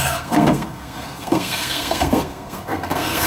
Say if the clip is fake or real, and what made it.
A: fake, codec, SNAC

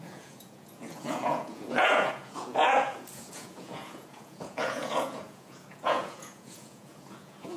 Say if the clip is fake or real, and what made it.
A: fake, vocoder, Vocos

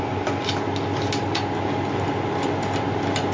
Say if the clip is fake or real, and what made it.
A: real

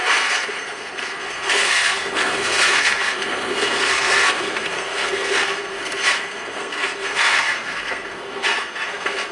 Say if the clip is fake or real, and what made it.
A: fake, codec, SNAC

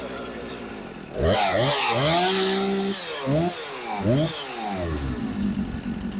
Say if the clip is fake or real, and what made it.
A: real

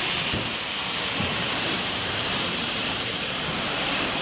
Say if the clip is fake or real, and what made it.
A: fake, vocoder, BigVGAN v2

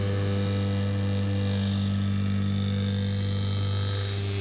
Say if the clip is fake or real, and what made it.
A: real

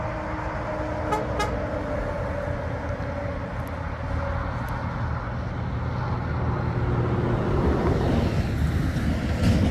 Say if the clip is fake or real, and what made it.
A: real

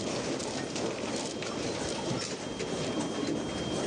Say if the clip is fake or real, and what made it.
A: fake, vocoder, BigVGAN v2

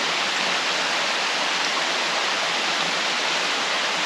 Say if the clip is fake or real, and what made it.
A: real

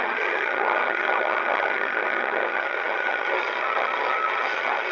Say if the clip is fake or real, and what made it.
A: fake, vocoder, HiFi-GAN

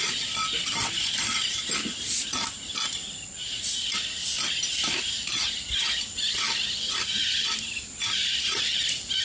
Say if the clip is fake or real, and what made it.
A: real